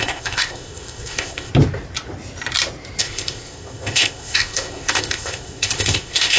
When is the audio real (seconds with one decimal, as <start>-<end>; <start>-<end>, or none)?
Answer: 1.5-3.0